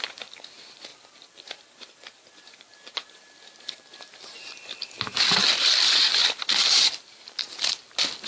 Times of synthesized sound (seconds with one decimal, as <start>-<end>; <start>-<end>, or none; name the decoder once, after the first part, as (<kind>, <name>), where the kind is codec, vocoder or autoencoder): none